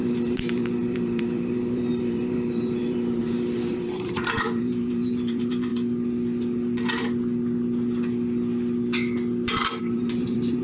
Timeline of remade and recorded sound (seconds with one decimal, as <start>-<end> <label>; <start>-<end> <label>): 0.0-5.7 remade; 5.7-9.8 recorded; 9.8-10.6 remade